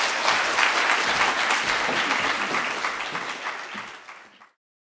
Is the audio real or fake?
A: real